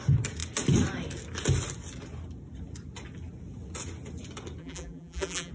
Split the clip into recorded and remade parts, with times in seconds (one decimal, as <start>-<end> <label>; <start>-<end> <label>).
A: 0.0-4.6 recorded; 4.6-5.5 remade